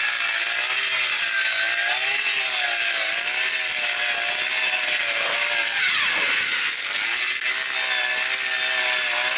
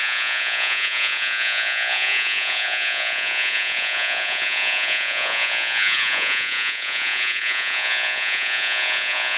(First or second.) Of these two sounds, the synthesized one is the second